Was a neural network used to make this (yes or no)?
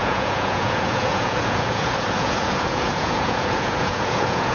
yes